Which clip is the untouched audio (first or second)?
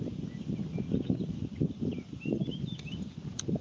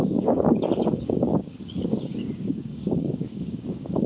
first